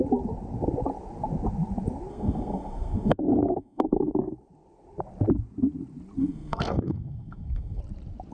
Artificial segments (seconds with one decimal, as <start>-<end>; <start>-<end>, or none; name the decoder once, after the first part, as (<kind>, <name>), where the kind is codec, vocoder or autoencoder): 2.1-4.1 (codec, SNAC); 6.2-7.8